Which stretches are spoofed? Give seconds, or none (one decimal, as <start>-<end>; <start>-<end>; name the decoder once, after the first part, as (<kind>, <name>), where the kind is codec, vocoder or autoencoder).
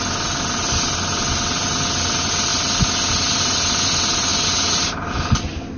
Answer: 4.3-5.1 (vocoder, BigVGAN v2)